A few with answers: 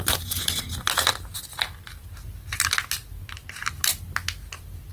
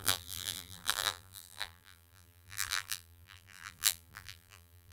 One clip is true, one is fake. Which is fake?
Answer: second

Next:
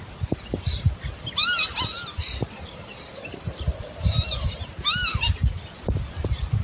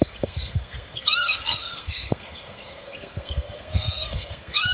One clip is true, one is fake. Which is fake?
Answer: second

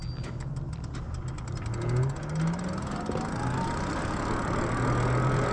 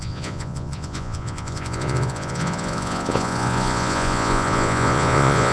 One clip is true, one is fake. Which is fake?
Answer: second